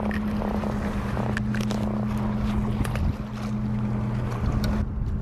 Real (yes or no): yes